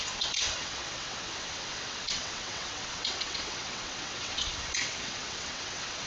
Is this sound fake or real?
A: fake